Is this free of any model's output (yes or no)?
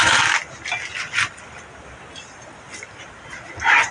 yes